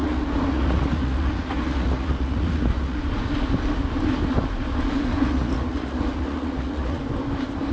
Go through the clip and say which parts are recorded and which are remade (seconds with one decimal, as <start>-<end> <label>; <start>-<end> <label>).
0.0-3.0 remade; 3.0-5.2 recorded; 5.2-7.0 remade; 7.0-7.7 recorded